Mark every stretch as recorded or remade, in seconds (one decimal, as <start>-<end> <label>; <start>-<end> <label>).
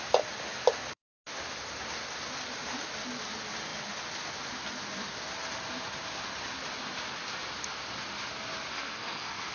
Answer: 0.0-8.7 recorded; 8.7-9.5 remade